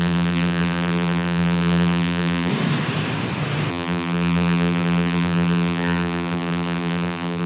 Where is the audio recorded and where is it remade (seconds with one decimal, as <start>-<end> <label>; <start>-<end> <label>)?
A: 0.0-2.5 remade; 2.5-3.7 recorded; 3.7-7.5 remade